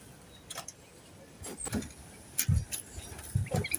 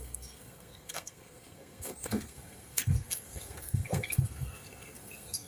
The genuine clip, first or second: first